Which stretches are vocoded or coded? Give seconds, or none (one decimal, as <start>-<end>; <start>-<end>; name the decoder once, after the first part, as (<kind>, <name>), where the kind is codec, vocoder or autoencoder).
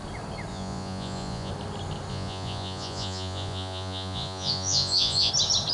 0.5-1.5 (vocoder, Vocos); 2.1-5.3